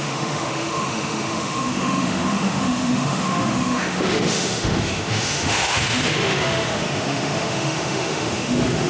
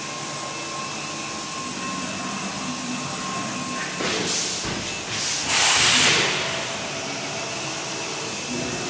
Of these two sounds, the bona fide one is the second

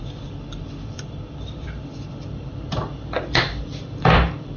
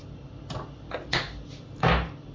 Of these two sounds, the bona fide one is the second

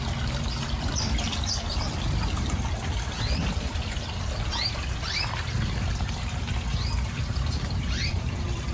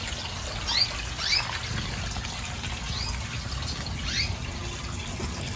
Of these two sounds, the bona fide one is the second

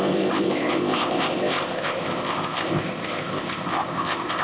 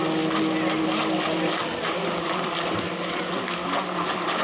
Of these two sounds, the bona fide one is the second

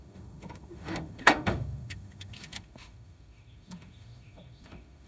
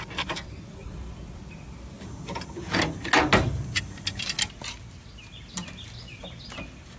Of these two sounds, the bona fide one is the second